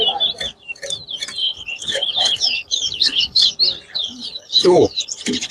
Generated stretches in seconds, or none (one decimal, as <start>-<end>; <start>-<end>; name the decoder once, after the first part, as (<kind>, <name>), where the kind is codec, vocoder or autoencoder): 1.4-3.5 (codec, HILCodec); 3.9-5.5